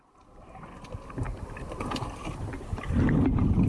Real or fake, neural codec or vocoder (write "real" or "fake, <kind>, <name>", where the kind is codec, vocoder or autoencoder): real